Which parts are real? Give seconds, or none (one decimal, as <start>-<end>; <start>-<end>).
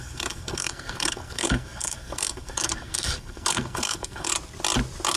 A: 4.3-5.2